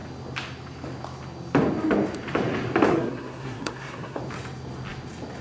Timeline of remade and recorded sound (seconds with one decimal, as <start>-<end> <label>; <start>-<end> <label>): 0.0-2.9 recorded; 2.9-4.2 remade; 4.2-5.4 recorded